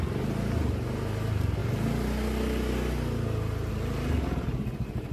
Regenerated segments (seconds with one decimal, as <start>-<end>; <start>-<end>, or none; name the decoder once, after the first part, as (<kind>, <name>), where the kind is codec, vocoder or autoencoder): none